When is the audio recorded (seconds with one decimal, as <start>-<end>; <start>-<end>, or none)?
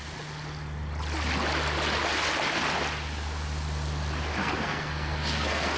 0.0-4.4